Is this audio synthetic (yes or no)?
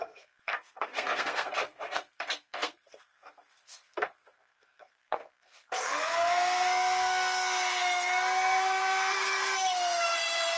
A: yes